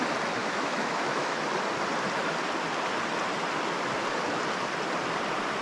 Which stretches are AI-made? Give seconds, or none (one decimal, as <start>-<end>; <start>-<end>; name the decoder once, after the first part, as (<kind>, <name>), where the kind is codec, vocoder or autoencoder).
0.4-1.4 (autoencoder, DAC-VAE)